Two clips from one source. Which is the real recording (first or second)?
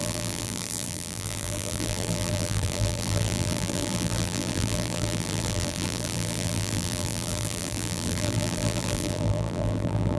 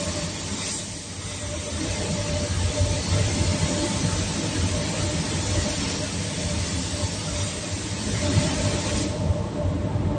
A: second